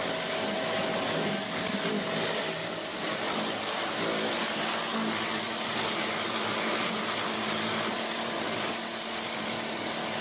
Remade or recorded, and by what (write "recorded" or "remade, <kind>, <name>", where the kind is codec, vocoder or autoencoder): recorded